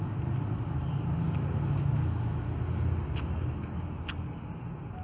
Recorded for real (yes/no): yes